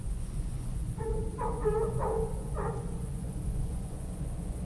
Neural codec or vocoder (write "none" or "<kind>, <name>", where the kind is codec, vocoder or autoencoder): vocoder, Vocos